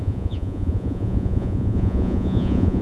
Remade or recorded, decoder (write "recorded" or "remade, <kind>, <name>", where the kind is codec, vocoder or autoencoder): remade, vocoder, Vocos